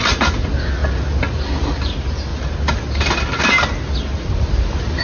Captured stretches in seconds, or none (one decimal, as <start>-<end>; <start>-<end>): 0.0-5.0